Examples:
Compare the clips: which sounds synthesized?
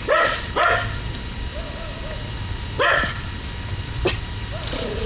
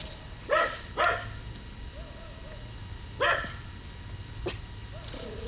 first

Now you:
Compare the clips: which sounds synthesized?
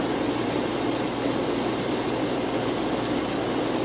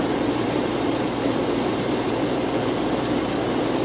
second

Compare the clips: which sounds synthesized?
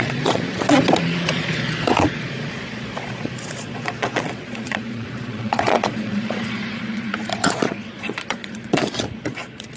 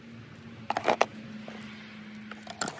first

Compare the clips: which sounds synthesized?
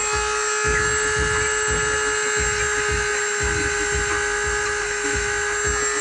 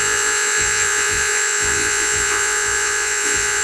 second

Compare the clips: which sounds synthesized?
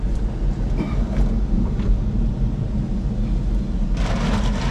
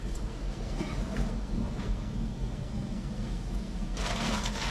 second